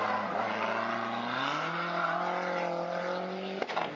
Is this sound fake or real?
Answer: real